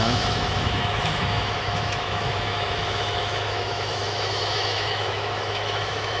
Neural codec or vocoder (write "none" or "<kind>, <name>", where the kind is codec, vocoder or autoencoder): autoencoder, DAC-VAE